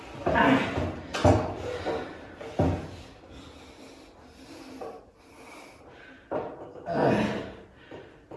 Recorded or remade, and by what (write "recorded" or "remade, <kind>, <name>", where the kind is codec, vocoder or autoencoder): recorded